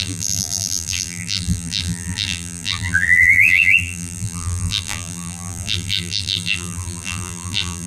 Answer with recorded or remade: remade